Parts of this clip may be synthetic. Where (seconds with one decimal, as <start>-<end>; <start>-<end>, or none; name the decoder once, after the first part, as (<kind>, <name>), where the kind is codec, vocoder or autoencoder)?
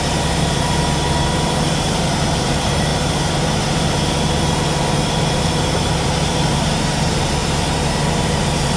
0.0-2.9 (vocoder, BigVGAN v2); 5.1-8.8